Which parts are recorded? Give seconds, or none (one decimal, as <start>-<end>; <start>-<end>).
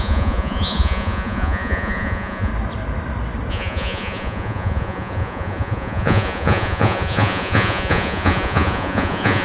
2.5-3.5